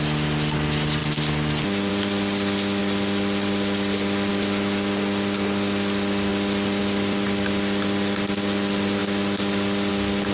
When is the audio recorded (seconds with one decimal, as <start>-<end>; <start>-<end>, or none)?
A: 0.0-10.3